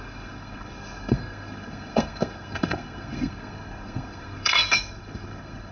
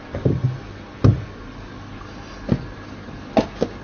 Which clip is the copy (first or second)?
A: first